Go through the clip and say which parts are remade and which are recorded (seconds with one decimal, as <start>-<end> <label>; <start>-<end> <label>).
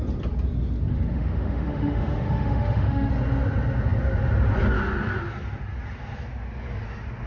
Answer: 0.0-0.9 recorded; 0.9-3.1 remade; 3.1-7.3 recorded